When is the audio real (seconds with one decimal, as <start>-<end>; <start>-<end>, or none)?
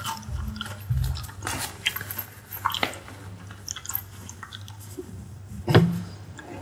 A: 0.0-4.2